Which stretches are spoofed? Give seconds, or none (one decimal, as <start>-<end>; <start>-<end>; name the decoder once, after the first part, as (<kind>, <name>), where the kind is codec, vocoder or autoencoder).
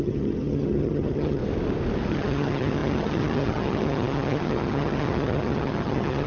0.0-1.4 (vocoder, HiFi-GAN); 2.1-6.3